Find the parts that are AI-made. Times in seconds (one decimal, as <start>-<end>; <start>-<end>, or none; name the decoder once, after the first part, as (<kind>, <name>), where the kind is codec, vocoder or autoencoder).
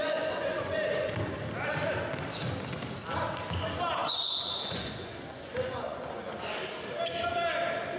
0.0-1.1 (vocoder, Vocos); 4.0-6.3